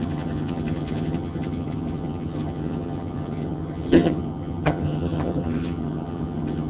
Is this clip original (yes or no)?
no